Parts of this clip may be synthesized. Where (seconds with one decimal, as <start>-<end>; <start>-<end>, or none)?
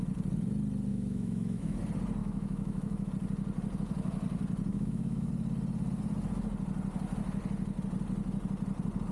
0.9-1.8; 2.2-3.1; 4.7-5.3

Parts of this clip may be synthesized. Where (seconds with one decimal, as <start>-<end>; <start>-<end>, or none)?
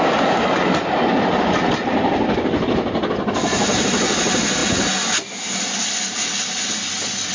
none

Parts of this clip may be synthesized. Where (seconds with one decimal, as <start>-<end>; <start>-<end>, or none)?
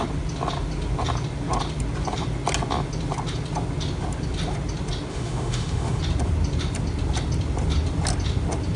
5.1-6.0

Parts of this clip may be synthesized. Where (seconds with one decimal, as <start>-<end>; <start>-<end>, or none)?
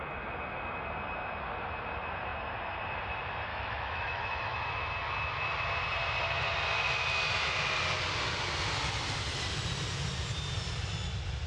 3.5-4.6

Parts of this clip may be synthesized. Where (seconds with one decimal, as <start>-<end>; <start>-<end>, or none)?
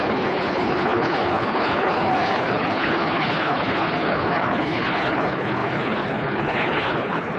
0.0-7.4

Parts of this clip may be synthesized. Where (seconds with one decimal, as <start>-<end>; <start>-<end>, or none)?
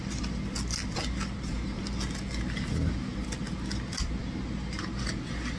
none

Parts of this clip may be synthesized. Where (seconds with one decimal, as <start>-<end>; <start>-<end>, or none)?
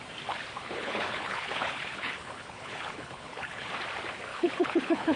0.6-3.7; 4.3-5.2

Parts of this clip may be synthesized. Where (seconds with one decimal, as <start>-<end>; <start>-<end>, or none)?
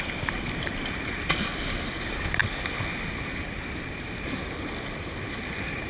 none